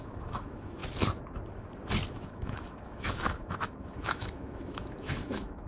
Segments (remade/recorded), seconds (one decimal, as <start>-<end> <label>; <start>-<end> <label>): 0.0-0.8 remade; 0.8-2.1 recorded; 2.1-5.7 remade